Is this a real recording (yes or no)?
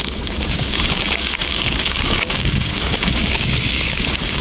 no